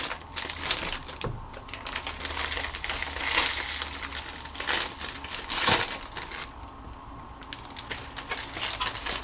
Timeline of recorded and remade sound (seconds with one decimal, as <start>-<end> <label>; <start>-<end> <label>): 0.0-9.2 recorded